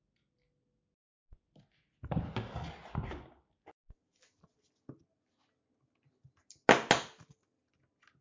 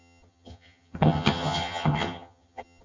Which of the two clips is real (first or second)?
first